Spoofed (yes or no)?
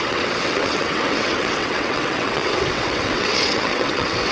yes